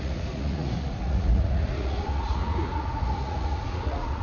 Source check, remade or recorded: remade